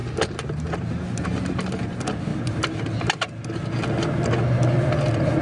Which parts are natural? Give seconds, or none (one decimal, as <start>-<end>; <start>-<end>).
0.0-5.4